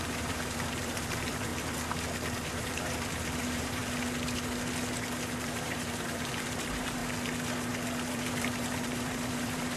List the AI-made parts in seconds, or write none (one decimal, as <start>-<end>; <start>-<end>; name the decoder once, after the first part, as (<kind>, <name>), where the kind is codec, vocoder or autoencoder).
0.0-1.5 (vocoder, BigVGAN v2); 2.5-3.8; 5.4-7.0; 8.1-9.8